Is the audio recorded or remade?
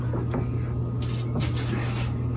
recorded